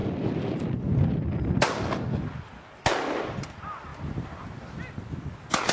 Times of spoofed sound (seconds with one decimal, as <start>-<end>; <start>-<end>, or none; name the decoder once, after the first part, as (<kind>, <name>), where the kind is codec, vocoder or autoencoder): none